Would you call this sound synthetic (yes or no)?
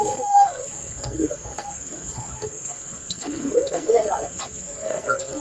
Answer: yes